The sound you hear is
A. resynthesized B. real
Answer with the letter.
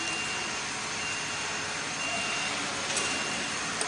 B